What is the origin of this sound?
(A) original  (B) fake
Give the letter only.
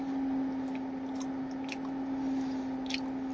A